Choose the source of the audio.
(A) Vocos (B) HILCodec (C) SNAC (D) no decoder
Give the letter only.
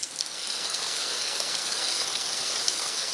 C